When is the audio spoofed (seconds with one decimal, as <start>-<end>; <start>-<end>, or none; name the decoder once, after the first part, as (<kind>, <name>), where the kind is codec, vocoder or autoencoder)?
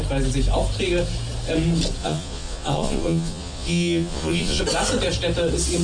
2.0-4.6 (vocoder, Vocos)